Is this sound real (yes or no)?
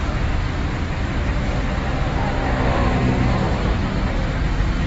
yes